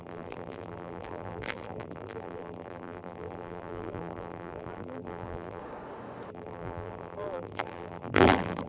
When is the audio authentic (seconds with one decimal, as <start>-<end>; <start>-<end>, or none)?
5.6-6.3